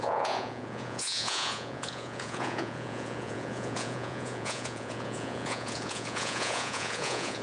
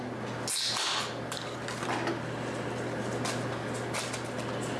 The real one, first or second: second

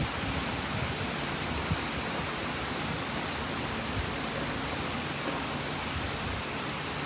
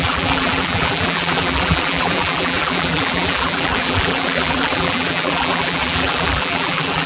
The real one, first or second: first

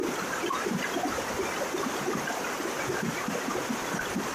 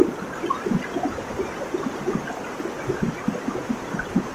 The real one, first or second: second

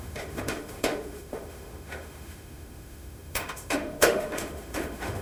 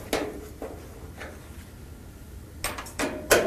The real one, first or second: second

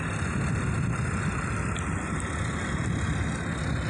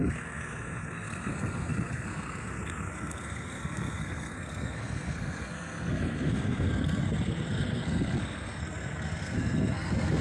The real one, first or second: first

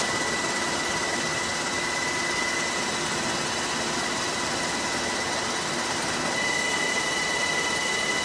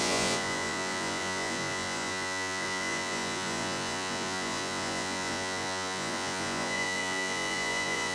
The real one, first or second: first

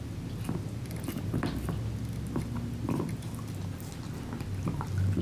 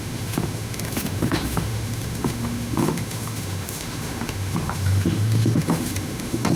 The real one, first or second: first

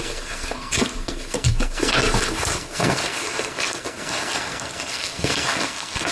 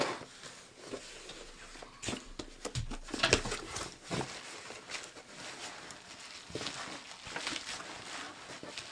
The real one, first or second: second